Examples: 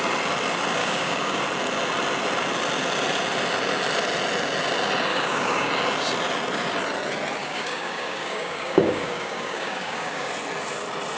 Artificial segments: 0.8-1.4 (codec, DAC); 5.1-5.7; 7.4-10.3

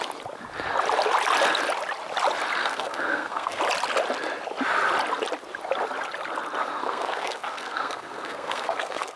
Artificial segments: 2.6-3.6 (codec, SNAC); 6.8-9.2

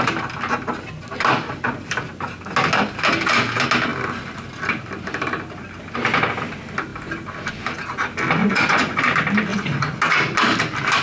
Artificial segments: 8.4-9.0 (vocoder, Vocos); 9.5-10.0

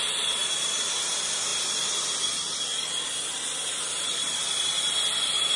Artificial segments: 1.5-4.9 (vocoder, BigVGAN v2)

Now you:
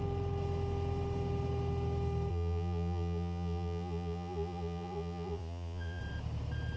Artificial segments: 2.3-6.0 (vocoder, Vocos)